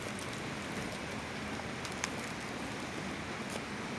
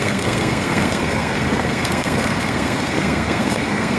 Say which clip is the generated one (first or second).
second